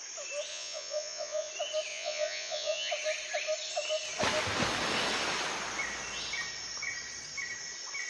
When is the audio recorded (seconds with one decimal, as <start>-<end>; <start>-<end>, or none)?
0.0-0.5; 1.5-1.9; 2.9-8.1